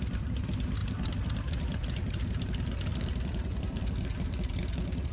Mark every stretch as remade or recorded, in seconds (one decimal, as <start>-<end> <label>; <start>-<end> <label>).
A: 0.0-0.8 recorded; 0.8-2.3 remade; 2.3-2.9 recorded; 2.9-3.9 remade; 3.9-5.1 recorded